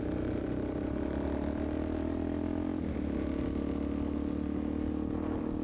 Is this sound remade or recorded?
recorded